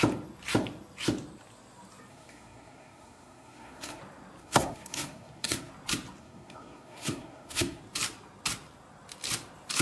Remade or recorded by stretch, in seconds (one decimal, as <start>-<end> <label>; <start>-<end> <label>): 0.0-2.1 recorded; 2.1-4.0 remade; 4.0-4.4 recorded; 4.4-5.7 remade; 5.7-6.2 recorded; 6.2-7.8 remade; 7.8-9.8 recorded